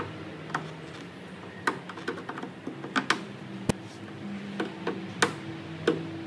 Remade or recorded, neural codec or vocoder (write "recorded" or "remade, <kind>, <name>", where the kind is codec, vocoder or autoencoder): recorded